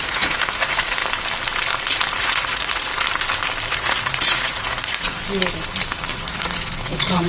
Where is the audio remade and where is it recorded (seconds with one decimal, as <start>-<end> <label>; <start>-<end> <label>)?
0.0-1.0 remade; 1.0-2.2 recorded; 2.2-2.9 remade; 2.9-3.7 recorded; 3.7-5.2 remade; 5.2-6.1 recorded; 6.1-7.3 remade